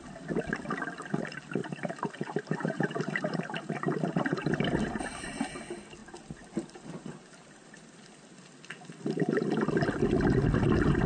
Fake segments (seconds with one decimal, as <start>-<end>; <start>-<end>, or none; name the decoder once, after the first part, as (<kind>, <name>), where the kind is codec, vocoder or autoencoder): 1.6-5.6 (vocoder, BigVGAN v2); 6.0-8.3